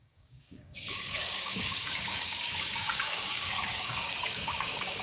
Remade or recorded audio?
remade